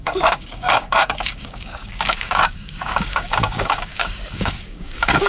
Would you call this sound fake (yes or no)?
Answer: yes